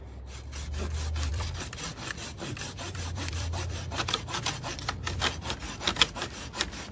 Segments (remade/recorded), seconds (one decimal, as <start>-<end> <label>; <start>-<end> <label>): 0.0-1.3 recorded; 1.3-5.4 remade; 5.4-6.9 recorded